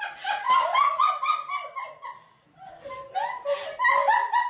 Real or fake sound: real